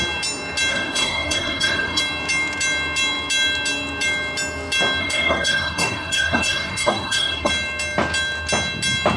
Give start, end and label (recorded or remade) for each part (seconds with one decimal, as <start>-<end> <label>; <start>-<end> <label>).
0.0-0.7 recorded; 0.7-2.0 remade; 2.0-5.0 recorded; 5.0-7.5 remade; 7.5-9.2 recorded